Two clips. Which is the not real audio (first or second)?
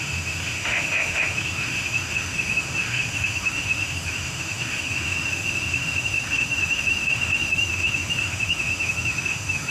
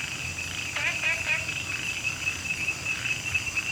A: first